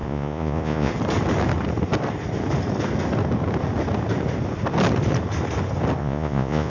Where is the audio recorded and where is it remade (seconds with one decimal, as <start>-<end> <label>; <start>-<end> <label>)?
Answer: 0.0-0.9 remade; 0.9-6.0 recorded; 6.0-6.7 remade